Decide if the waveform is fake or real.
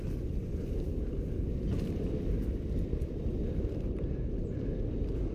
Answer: fake